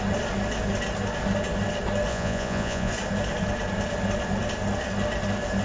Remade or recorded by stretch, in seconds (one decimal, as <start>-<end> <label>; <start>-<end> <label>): 0.0-2.1 recorded; 2.1-2.9 remade; 2.9-5.6 recorded